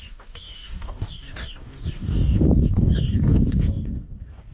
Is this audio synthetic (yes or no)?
yes